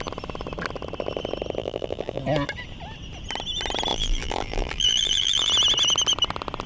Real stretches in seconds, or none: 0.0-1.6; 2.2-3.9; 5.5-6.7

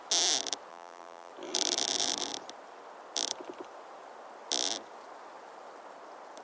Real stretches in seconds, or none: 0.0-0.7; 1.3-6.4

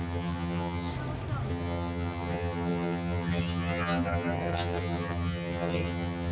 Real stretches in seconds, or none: 0.9-1.5

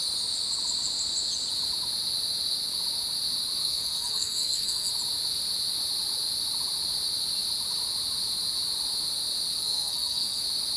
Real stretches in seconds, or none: 0.0-3.6; 4.9-9.6; 10.4-10.8

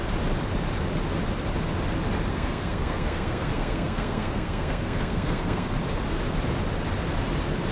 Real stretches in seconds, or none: 0.0-2.3; 5.8-7.7

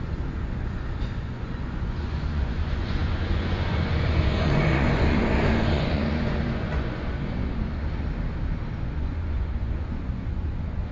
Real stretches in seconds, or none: 7.8-8.7